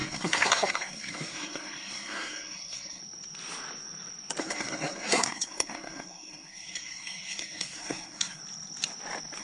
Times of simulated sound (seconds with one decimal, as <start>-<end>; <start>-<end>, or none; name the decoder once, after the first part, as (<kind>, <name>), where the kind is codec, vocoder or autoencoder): 0.0-3.0 (codec, SNAC); 4.4-8.4